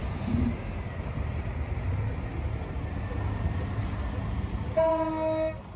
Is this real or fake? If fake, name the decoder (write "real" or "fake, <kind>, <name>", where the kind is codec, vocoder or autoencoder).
real